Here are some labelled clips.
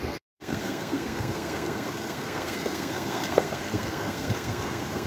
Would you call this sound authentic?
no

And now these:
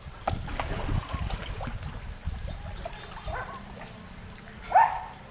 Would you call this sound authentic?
yes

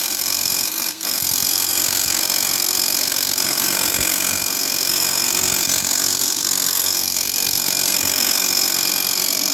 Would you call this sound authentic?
no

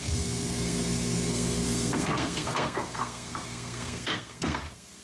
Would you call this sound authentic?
no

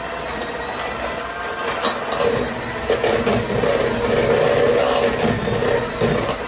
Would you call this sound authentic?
yes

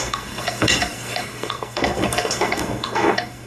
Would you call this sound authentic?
no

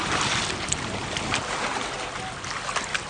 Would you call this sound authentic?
yes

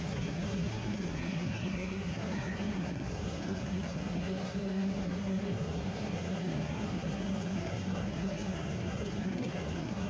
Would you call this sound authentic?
no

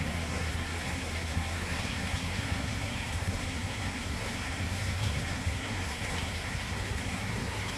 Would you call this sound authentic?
no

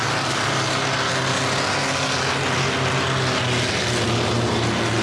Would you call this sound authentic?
yes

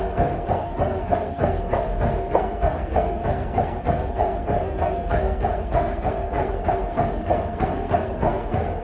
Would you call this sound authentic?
no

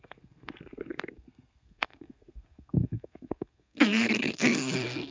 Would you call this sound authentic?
no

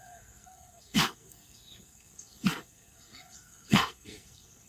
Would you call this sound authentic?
no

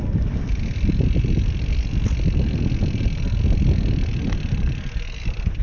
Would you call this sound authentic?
yes